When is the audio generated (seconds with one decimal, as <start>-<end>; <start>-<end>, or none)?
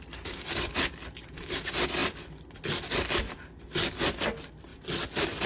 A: none